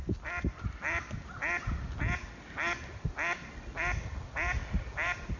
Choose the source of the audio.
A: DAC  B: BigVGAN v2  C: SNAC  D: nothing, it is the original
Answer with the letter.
D